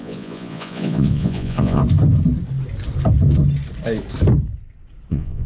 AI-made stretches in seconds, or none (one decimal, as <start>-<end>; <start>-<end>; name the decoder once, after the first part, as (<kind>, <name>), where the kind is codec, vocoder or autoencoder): 0.0-1.8 (vocoder, Vocos); 5.1-5.5